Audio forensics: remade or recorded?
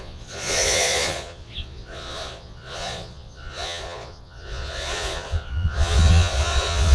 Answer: remade